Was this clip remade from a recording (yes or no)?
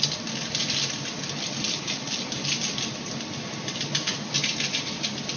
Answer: no